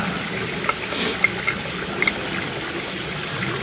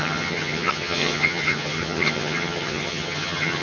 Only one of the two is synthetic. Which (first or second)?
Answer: second